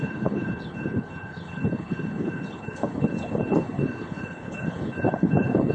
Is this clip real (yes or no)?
no